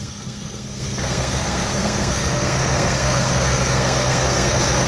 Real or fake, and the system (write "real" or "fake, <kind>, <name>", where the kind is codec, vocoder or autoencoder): fake, codec, SNAC